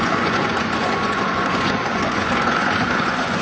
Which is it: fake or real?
fake